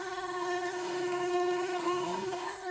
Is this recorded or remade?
remade